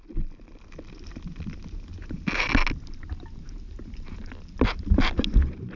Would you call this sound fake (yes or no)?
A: no